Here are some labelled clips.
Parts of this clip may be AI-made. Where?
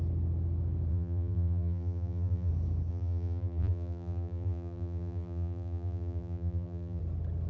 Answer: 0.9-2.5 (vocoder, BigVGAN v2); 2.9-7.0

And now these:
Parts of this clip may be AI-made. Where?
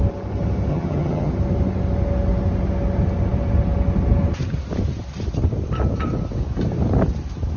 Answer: 0.7-1.3 (vocoder, HiFi-GAN)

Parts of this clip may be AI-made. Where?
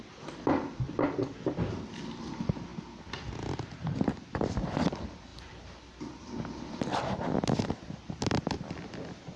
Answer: 5.3-7.0 (vocoder, BigVGAN v2)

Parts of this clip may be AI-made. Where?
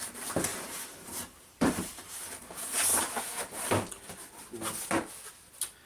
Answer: 0.5-2.3 (vocoder, BigVGAN v2)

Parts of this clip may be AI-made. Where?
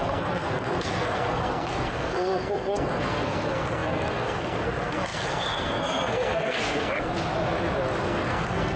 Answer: 0.0-7.1 (codec, SNAC); 8.0-8.8